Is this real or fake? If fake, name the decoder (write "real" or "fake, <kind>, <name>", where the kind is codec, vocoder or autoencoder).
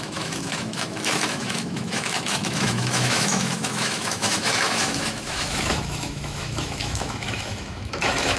fake, autoencoder, DAC-VAE